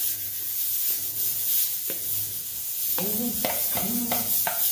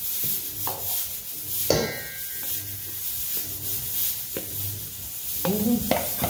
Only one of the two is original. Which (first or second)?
second